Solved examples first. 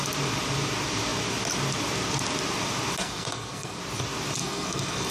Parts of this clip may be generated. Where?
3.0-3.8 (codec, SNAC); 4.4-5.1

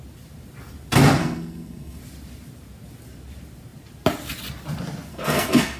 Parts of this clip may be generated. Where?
1.2-2.0 (codec, SNAC); 5.1-5.8

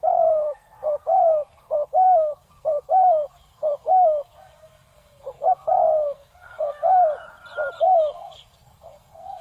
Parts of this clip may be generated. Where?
0.0-7.0 (codec, SNAC); 7.8-9.4